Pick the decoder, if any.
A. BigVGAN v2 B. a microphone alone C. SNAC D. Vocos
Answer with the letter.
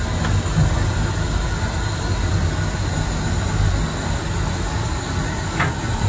B